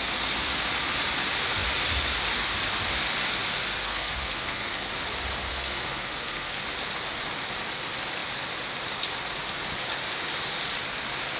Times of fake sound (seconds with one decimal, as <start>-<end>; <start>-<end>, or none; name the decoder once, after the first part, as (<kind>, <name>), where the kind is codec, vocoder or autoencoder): 3.8-4.9 (codec, SNAC); 5.5-6.6